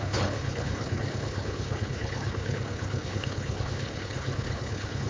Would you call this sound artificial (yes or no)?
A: yes